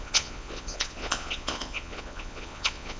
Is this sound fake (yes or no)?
yes